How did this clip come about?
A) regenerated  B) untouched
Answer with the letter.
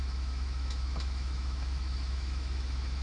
A